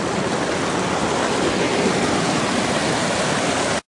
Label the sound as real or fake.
real